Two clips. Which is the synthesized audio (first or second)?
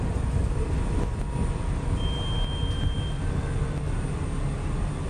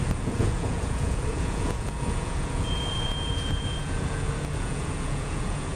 second